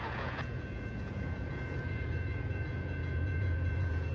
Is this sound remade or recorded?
remade